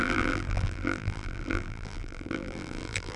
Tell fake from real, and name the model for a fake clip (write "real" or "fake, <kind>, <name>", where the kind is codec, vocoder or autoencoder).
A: fake, vocoder, BigVGAN v2